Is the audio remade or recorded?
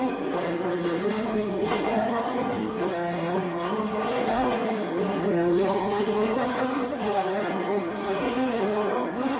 remade